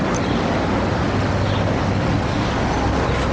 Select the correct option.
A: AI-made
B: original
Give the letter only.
B